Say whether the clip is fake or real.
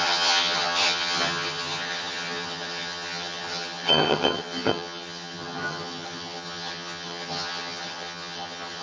fake